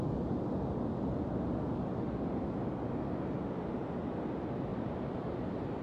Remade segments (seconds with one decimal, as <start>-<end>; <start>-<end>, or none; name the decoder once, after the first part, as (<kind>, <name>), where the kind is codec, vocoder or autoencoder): 4.7-5.3 (vocoder, BigVGAN v2)

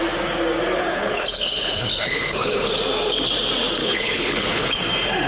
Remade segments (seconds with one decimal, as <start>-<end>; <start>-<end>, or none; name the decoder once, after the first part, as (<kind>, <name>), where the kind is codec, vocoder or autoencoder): 0.8-2.7 (codec, HILCodec); 3.8-4.8